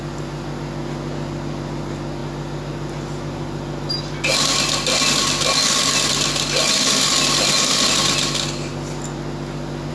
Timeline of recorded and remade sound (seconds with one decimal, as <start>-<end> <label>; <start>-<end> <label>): 0.0-9.9 recorded